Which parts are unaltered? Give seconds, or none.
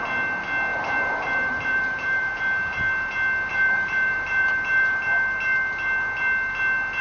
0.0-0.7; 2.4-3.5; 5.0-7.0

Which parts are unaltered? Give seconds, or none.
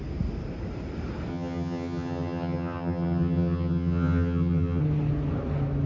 0.0-1.3; 4.8-5.9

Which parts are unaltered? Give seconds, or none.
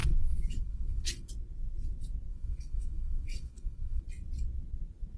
1.3-2.3; 4.0-5.2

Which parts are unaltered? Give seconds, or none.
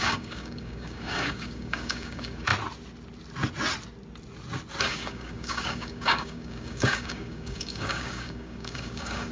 2.5-4.8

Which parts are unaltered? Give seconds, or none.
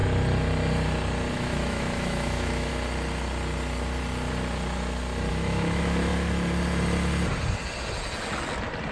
0.0-1.3; 2.7-5.3; 6.1-8.9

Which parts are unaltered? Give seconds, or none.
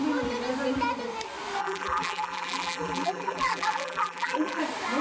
0.0-1.6; 4.6-5.0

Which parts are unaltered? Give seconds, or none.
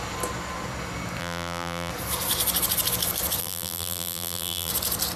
0.0-1.2; 1.9-3.4; 4.7-5.2